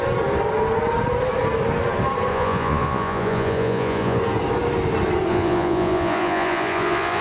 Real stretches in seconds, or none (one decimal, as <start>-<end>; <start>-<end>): 0.0-2.3; 4.2-5.3